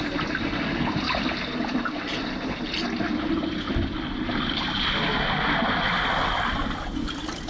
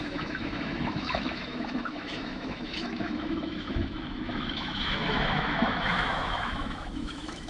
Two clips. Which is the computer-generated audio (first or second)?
second